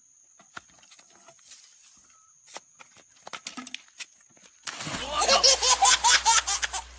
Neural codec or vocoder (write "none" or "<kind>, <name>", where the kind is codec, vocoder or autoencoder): none